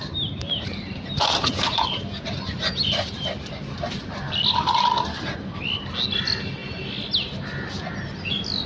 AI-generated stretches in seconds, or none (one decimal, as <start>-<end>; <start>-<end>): 0.0-4.3